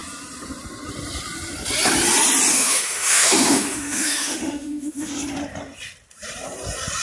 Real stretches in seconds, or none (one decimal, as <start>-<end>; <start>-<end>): 0.0-2.5; 5.1-7.0